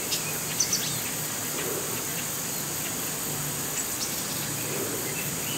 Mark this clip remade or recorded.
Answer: recorded